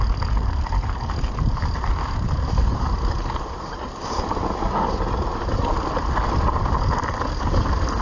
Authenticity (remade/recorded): recorded